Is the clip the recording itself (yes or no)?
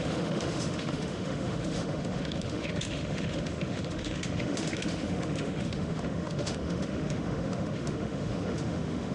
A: no